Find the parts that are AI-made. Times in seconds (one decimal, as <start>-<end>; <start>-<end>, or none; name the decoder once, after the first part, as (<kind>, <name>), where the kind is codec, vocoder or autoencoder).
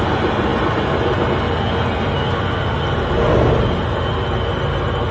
none